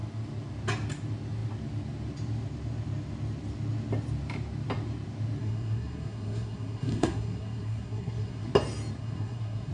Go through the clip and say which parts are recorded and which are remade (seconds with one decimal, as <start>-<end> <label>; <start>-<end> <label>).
0.0-5.4 recorded; 5.4-8.5 remade; 8.5-9.0 recorded; 9.0-9.7 remade